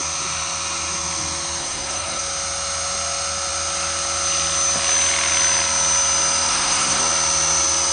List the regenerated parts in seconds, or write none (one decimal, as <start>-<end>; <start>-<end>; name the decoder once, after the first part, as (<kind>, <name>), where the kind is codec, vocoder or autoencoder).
1.6-2.2 (codec, SNAC); 6.5-7.0